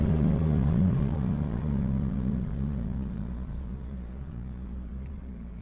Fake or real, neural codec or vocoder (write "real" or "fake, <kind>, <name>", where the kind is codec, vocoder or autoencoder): fake, vocoder, Vocos